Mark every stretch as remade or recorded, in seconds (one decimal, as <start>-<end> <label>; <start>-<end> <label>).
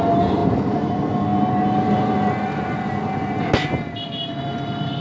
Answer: 0.0-0.4 recorded; 0.4-0.9 remade; 0.9-5.0 recorded